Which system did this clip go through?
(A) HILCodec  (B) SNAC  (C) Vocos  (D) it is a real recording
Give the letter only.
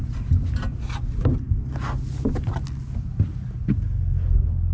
D